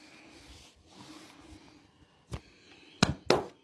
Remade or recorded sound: recorded